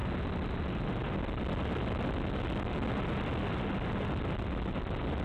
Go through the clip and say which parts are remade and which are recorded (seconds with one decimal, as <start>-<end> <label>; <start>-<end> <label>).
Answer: 0.0-5.2 recorded